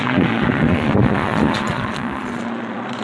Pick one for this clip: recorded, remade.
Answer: remade